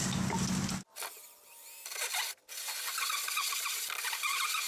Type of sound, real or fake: real